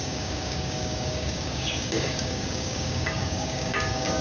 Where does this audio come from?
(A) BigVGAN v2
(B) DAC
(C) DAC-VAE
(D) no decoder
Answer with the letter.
B